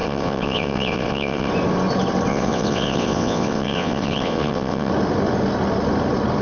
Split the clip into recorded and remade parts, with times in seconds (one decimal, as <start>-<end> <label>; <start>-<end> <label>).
0.0-1.5 remade; 1.5-2.3 recorded; 2.3-4.9 remade; 4.9-6.4 recorded